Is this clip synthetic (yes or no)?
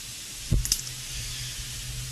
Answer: no